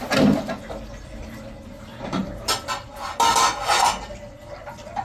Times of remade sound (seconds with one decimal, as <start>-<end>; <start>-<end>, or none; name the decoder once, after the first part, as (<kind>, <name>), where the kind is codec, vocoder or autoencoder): none